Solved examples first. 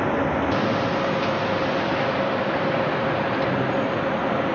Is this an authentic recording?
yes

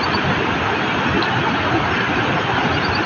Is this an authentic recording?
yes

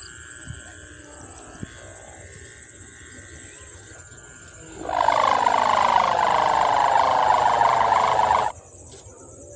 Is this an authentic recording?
yes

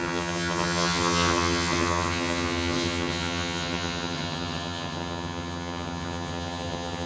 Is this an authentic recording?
no